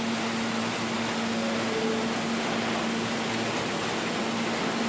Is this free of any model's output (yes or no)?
yes